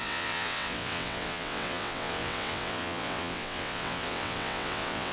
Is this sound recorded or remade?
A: remade